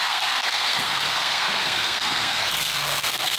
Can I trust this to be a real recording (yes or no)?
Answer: no